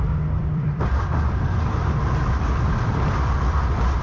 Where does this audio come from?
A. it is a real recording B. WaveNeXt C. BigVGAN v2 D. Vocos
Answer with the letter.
C